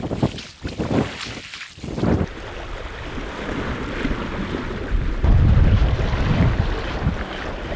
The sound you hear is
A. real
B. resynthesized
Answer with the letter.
A